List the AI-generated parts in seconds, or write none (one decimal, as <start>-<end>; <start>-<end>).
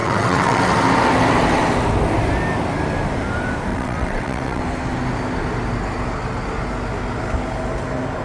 0.0-0.6; 3.7-4.6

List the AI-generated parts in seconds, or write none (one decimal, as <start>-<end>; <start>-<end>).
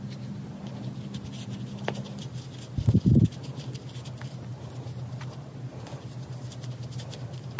none